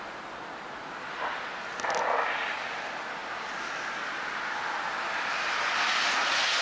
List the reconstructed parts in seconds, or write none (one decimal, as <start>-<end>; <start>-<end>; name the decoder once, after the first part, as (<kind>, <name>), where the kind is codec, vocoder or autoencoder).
none